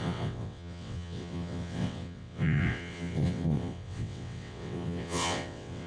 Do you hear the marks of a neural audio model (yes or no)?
yes